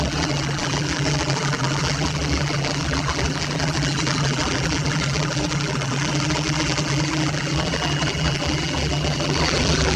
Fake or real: fake